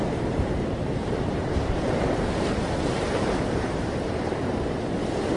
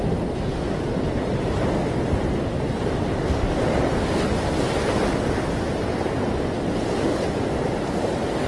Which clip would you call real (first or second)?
second